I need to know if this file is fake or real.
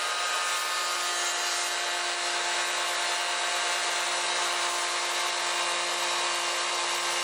real